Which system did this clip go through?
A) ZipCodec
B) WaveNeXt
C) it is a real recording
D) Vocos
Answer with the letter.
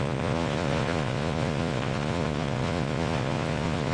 D